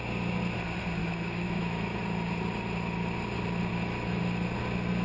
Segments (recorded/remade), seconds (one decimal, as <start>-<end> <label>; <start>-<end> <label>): 0.0-1.0 recorded; 1.0-2.0 remade; 2.0-3.7 recorded; 3.7-4.2 remade; 4.2-5.0 recorded